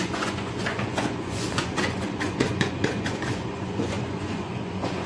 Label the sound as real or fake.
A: fake